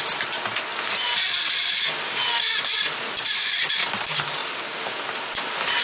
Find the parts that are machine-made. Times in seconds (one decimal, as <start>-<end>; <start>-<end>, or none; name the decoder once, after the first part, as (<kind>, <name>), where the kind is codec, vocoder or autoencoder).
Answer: none